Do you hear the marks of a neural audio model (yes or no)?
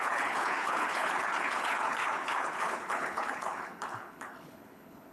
yes